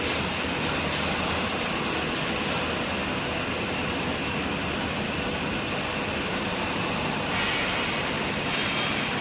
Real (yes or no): yes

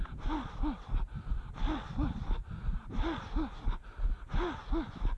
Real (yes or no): yes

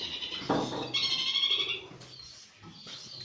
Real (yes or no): yes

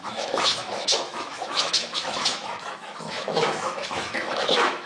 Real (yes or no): no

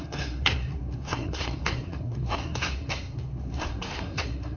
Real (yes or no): no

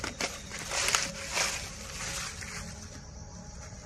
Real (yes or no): yes